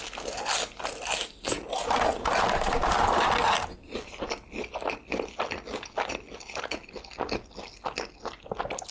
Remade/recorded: recorded